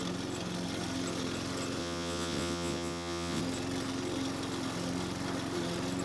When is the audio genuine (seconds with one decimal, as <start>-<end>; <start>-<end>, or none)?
0.0-1.8; 3.4-6.0